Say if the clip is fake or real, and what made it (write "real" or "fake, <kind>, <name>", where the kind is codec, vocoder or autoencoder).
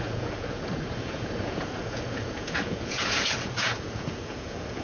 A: fake, vocoder, Vocos